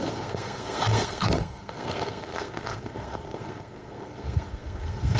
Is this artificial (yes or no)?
yes